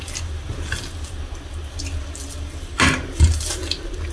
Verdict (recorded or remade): recorded